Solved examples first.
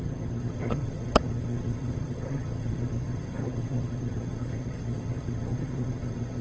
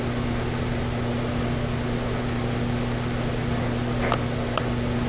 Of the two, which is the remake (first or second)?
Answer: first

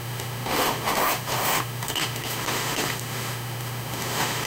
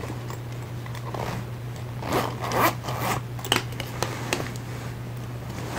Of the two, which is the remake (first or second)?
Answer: first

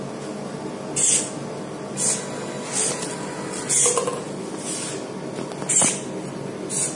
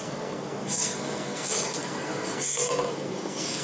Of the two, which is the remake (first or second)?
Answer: second